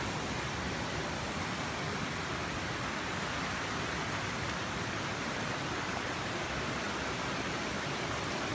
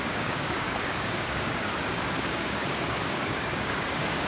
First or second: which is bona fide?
first